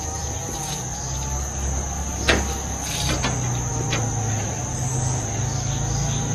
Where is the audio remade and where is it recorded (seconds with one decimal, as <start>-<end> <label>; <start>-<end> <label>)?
0.0-6.3 recorded